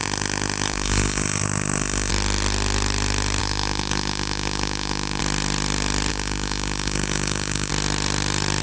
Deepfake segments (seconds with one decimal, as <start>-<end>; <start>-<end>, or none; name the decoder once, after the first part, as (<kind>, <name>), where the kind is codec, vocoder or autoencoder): 0.0-2.1 (autoencoder, DAC-VAE); 3.4-5.2; 6.1-7.7